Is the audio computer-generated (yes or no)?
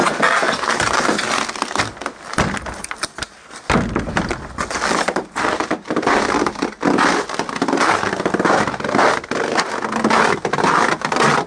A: no